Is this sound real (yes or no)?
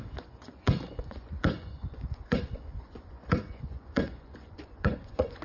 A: no